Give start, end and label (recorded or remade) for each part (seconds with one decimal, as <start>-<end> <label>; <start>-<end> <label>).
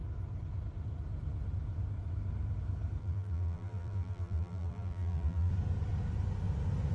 0.0-3.0 recorded; 3.0-5.5 remade; 5.5-6.9 recorded